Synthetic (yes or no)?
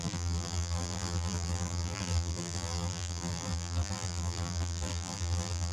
yes